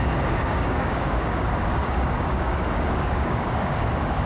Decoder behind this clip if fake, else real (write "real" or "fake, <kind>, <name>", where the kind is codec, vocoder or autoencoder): fake, codec, DAC